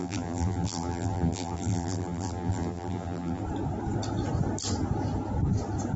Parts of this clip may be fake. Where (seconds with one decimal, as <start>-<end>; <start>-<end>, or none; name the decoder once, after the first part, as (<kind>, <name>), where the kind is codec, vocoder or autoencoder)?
0.0-3.4 (vocoder, BigVGAN v2)